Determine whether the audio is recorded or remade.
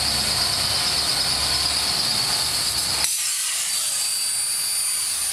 recorded